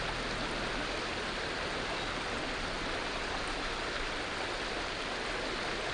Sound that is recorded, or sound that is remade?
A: recorded